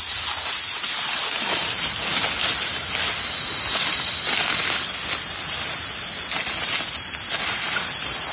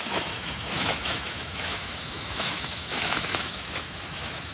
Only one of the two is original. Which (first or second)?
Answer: first